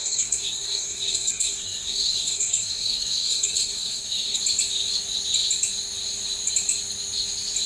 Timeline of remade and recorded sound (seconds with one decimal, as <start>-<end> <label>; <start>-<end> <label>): 0.0-4.4 remade; 4.4-7.7 recorded